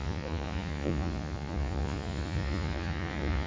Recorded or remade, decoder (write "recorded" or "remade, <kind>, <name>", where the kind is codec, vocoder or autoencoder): remade, vocoder, Vocos